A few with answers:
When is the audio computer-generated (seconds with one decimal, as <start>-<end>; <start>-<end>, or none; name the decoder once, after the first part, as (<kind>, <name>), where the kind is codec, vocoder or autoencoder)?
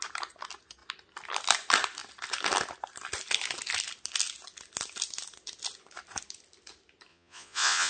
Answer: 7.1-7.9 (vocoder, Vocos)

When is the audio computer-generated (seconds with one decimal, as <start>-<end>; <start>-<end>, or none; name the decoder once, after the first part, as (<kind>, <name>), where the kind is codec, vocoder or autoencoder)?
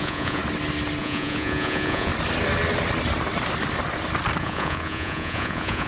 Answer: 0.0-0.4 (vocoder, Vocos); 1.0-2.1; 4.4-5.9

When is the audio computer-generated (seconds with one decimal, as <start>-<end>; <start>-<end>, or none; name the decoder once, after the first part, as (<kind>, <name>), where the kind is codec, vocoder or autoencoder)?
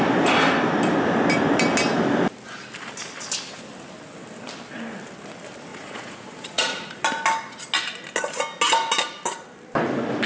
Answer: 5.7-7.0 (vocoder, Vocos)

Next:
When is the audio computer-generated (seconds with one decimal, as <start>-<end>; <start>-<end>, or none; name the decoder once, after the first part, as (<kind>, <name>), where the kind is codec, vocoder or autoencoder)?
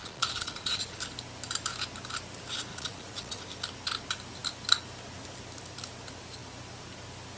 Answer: 0.0-1.0 (vocoder, Vocos); 2.7-3.4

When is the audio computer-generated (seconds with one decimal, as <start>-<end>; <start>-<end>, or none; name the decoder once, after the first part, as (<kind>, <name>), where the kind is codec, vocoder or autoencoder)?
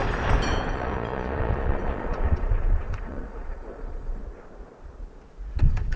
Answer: 0.7-4.2 (vocoder, Vocos); 5.6-6.0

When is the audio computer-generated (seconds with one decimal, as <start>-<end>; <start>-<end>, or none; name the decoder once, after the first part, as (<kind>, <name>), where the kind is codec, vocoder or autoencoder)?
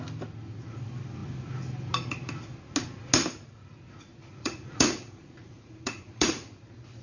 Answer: 4.3-6.6 (vocoder, Vocos)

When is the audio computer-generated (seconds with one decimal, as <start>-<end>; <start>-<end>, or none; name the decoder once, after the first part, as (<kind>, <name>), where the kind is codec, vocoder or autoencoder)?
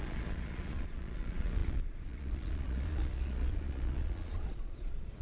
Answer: 0.0-5.2 (vocoder, Vocos)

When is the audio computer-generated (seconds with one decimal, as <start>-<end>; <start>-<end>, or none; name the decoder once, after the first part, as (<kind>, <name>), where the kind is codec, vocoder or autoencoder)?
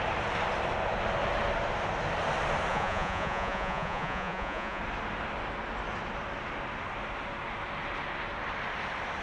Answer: 2.7-4.8 (vocoder, Vocos)